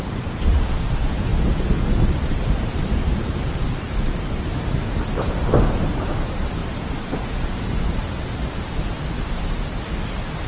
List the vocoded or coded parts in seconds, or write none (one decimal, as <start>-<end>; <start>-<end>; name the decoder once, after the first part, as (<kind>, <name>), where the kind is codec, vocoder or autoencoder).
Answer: 0.0-1.3 (vocoder, BigVGAN v2); 2.2-6.6; 7.1-10.5